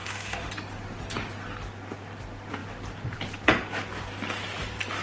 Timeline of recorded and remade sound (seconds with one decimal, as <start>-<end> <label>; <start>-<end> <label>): 0.0-0.5 remade; 0.5-5.0 recorded